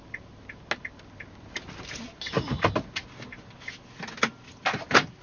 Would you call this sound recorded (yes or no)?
yes